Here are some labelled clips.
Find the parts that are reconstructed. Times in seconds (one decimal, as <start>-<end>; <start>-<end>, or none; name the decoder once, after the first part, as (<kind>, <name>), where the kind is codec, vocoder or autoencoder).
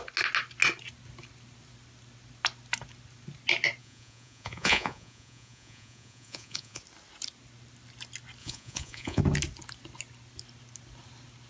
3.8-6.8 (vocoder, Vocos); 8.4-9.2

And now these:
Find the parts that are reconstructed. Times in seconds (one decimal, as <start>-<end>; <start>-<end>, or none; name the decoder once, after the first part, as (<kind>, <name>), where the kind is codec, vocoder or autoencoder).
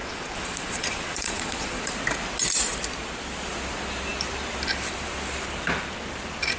0.0-1.9 (vocoder, Vocos)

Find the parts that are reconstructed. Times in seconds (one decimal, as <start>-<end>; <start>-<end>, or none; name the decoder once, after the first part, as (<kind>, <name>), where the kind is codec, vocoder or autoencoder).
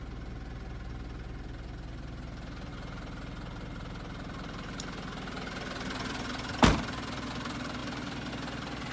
none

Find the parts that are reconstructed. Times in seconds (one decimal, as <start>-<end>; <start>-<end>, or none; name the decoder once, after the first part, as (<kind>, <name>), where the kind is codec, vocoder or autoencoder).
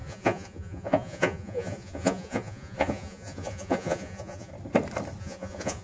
0.0-4.5 (vocoder, Vocos); 5.2-5.8